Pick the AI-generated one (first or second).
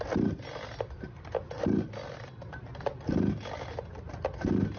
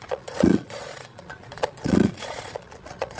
second